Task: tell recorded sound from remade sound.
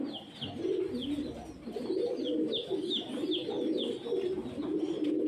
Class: recorded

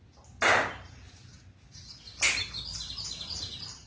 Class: recorded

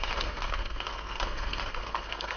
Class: remade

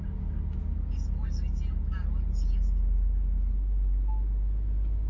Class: recorded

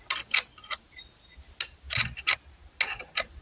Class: recorded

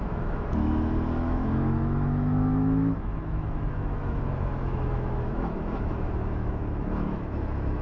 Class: remade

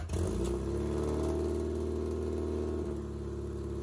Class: recorded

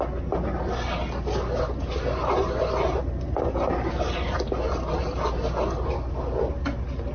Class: recorded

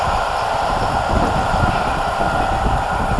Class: recorded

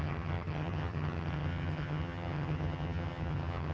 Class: remade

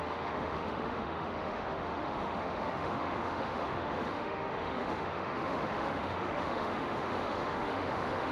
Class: remade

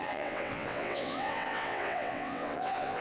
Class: remade